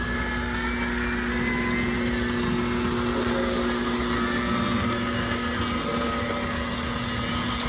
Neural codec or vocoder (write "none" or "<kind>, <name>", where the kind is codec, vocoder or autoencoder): none